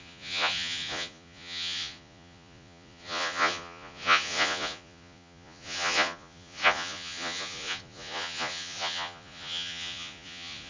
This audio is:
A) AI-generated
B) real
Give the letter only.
A